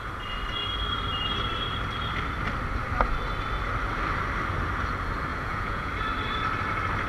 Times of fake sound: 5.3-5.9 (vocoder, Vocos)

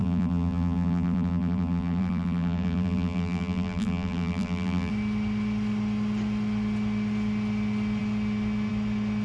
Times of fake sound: 0.0-4.9 (vocoder, BigVGAN v2)

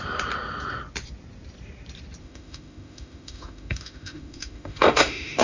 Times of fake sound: 2.2-5.4 (autoencoder, DAC-VAE)

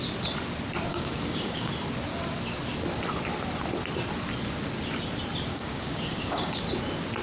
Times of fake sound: 0.9-1.7 (codec, DAC); 5.5-6.6

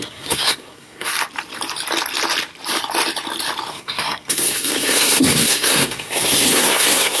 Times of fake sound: 0.0-1.1 (codec, SNAC); 3.7-7.2

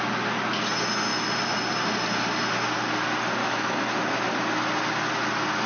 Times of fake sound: 3.4-3.9 (autoencoder, DAC-VAE)

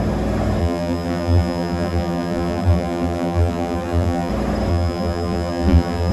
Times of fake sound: 0.6-4.3 (vocoder, BigVGAN v2); 4.7-6.1